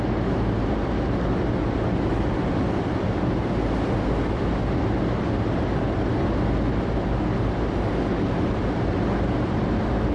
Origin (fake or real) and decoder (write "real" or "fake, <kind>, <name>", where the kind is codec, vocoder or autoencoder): real